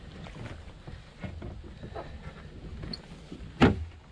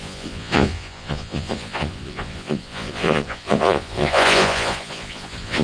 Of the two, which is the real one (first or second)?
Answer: first